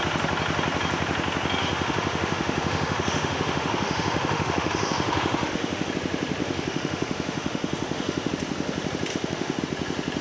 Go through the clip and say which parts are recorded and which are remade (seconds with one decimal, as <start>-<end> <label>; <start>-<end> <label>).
0.0-1.6 recorded; 1.6-5.9 remade; 5.9-6.4 recorded; 6.4-8.3 remade; 8.3-9.1 recorded; 9.1-9.6 remade; 9.6-10.2 recorded